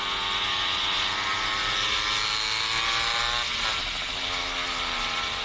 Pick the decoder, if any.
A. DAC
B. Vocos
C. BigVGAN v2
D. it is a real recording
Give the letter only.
D